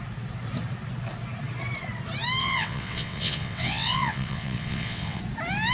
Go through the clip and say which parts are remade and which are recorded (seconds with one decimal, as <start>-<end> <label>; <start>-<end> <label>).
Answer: 0.0-2.4 recorded; 2.4-5.2 remade; 5.2-5.7 recorded